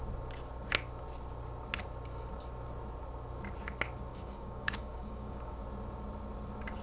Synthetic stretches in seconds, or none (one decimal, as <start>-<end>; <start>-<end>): 4.1-5.6